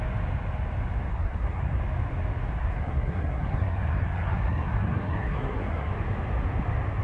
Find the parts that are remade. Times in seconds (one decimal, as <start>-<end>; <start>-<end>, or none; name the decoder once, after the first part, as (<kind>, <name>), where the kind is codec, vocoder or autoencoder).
1.1-1.8 (codec, SNAC); 2.6-5.9